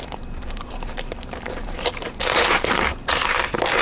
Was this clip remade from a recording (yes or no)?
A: yes